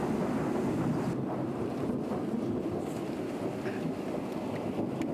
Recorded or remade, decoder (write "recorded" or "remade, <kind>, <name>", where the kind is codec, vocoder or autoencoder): recorded